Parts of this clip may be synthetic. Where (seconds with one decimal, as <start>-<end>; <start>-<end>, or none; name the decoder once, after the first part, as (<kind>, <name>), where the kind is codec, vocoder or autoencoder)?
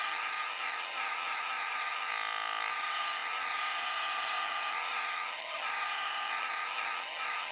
0.0-2.1 (vocoder, HiFi-GAN); 2.7-7.5